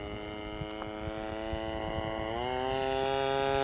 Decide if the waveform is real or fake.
real